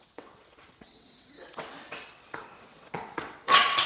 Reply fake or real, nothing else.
fake